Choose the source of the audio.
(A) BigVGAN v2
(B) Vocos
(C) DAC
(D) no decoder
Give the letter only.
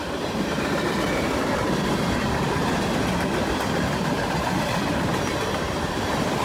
A